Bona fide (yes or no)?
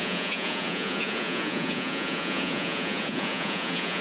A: no